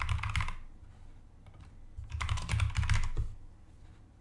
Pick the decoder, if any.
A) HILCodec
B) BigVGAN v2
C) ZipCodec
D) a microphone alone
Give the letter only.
D